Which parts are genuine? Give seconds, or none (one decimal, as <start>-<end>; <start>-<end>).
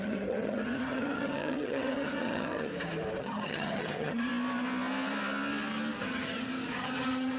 2.7-3.2; 4.3-6.0